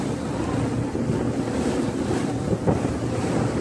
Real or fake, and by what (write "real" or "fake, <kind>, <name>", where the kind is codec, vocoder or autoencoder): real